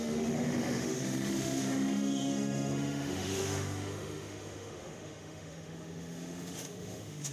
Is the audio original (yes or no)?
no